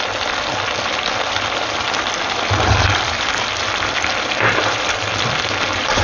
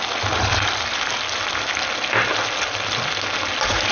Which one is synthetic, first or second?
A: first